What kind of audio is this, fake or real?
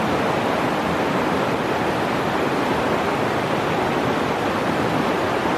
real